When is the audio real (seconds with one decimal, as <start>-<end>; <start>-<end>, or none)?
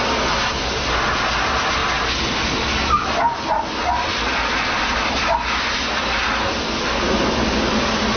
0.0-8.2